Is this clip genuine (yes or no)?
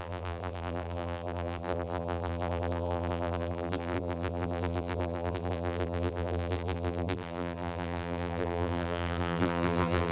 no